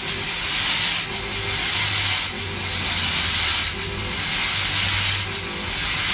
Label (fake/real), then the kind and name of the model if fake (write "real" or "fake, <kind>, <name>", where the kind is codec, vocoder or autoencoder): real